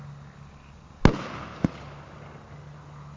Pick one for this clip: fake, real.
real